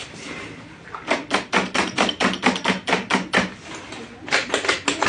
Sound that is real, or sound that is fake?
fake